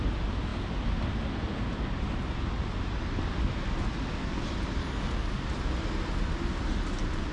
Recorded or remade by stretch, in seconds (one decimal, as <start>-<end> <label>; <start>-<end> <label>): 0.0-4.8 recorded; 4.8-5.5 remade; 5.5-7.3 recorded

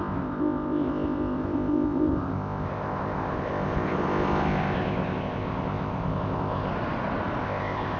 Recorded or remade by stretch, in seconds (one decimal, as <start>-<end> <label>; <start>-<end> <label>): 0.0-6.7 remade; 6.7-7.4 recorded; 7.4-8.0 remade

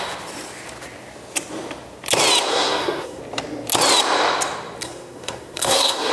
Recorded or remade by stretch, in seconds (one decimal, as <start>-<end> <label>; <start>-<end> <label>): 0.0-2.5 recorded; 2.5-3.2 remade; 3.2-4.8 recorded; 4.8-6.1 remade

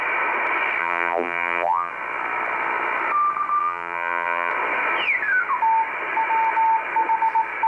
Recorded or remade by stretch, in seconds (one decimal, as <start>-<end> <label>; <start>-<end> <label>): 0.0-0.8 recorded; 0.8-1.9 remade; 1.9-3.6 recorded; 3.6-4.5 remade; 4.5-7.7 recorded

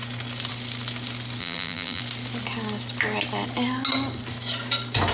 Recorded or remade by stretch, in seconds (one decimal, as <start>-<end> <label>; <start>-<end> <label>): 0.0-1.4 recorded; 1.4-2.0 remade; 2.0-5.1 recorded